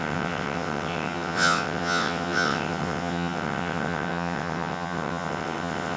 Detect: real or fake fake